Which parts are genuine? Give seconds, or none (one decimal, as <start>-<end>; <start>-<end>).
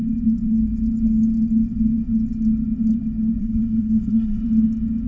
0.0-3.4; 4.4-5.1